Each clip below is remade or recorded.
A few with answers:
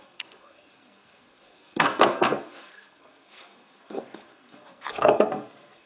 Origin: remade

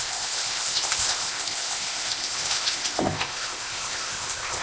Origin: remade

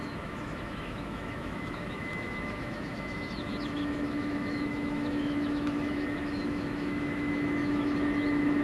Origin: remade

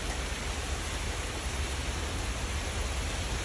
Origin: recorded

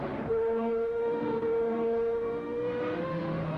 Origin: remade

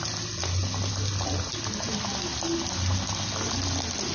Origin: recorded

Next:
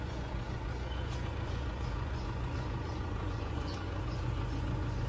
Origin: remade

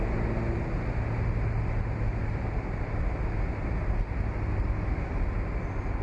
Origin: recorded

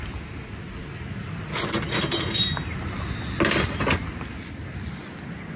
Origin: recorded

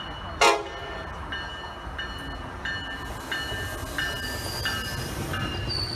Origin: recorded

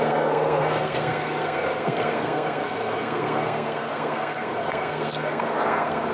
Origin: remade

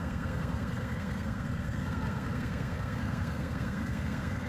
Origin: remade